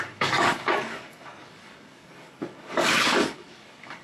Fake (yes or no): yes